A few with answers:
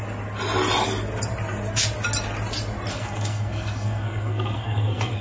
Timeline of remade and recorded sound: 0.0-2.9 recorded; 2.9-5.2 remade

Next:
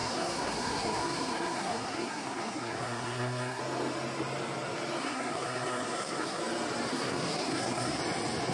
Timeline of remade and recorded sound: 0.0-3.6 remade; 3.6-5.0 recorded; 5.0-6.4 remade; 6.4-6.9 recorded; 6.9-8.0 remade; 8.0-8.5 recorded

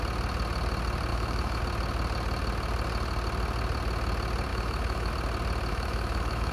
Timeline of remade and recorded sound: 0.0-1.1 recorded; 1.1-1.6 remade; 1.6-4.5 recorded; 4.5-5.1 remade; 5.1-5.7 recorded; 5.7-6.5 remade

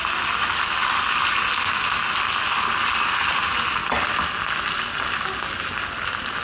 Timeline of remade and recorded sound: 0.0-6.4 recorded